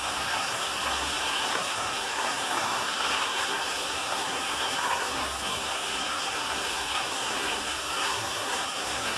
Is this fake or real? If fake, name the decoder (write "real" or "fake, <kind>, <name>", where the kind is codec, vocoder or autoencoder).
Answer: fake, codec, SNAC